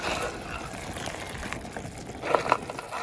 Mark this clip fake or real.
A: real